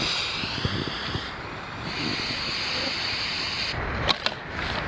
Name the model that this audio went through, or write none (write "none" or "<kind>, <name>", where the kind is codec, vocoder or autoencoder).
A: none